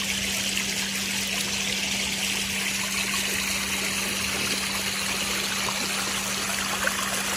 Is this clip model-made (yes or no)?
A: no